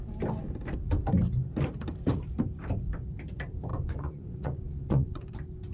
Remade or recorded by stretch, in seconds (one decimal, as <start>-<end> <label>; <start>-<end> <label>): 0.0-3.7 recorded; 3.7-5.3 remade; 5.3-5.7 recorded

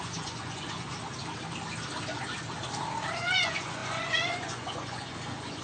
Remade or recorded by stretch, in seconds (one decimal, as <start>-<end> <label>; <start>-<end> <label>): 0.0-0.9 remade; 0.9-3.2 recorded; 3.2-5.6 remade

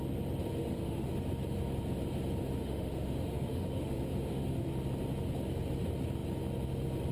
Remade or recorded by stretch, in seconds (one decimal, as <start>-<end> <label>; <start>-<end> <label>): 0.0-0.6 recorded; 0.6-1.1 remade; 1.1-2.6 recorded; 2.6-4.7 remade; 4.7-7.1 recorded

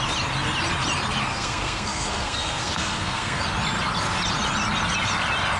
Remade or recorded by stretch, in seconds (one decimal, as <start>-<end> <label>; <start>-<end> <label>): 0.0-1.3 recorded; 1.3-3.4 remade; 3.4-5.6 recorded

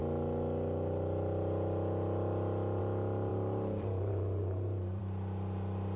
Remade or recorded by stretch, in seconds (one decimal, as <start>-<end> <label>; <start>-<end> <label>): 0.0-3.3 recorded; 3.3-5.0 remade; 5.0-6.0 recorded

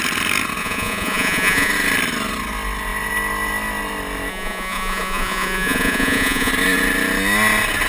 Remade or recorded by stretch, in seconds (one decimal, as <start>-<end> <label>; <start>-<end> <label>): 0.0-0.6 recorded; 0.6-1.7 remade; 1.7-4.3 recorded; 4.3-6.5 remade; 6.5-7.9 recorded

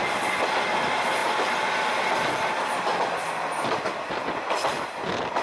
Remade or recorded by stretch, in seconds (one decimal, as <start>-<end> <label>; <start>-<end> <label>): 0.0-5.4 recorded

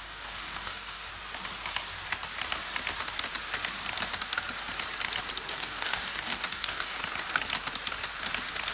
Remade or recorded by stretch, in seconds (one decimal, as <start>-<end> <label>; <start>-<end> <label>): 0.0-1.1 remade; 1.1-5.5 recorded; 5.5-7.0 remade; 7.0-8.7 recorded